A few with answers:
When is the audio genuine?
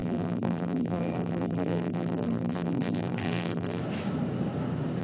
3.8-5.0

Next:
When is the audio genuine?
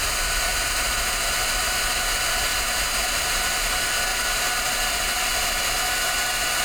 0.0-0.5; 1.2-2.5; 3.4-4.1; 4.7-6.6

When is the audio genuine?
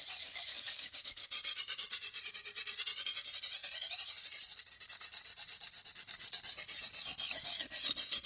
0.0-0.5; 2.3-3.6; 5.9-8.3